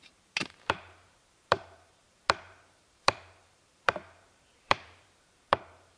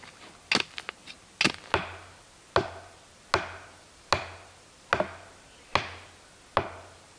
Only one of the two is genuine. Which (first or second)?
second